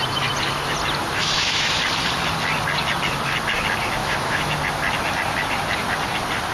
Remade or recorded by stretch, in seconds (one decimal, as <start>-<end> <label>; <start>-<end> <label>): 0.0-1.2 recorded; 1.2-1.8 remade; 1.8-4.0 recorded; 4.0-4.5 remade; 4.5-6.5 recorded